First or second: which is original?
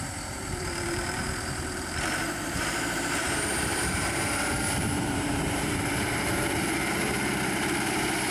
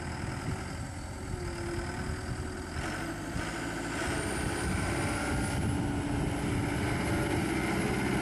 second